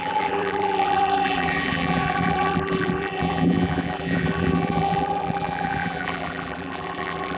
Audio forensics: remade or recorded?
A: remade